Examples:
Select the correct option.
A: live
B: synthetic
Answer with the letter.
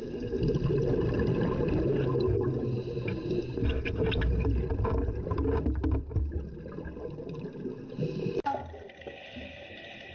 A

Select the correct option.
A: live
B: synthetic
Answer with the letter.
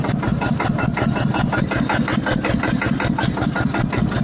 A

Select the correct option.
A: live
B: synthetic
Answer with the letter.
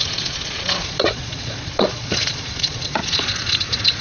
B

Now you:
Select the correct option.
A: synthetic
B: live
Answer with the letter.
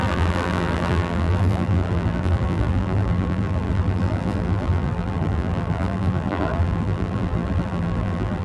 A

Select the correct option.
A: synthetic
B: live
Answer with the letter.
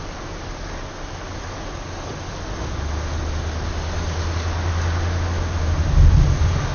B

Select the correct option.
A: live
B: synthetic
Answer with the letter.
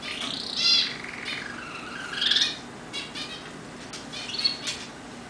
A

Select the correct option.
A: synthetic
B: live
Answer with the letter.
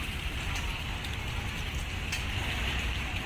B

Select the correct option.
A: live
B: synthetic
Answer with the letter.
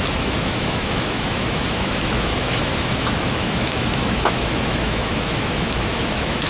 B